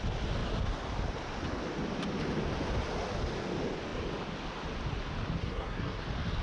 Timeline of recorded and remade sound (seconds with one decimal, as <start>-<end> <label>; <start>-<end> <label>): 0.0-5.4 recorded; 5.4-6.0 remade; 6.0-6.4 recorded